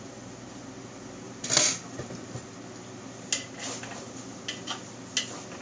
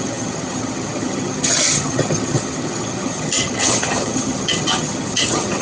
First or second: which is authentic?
first